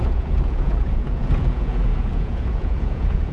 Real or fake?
fake